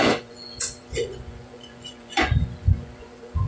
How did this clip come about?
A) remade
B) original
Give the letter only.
A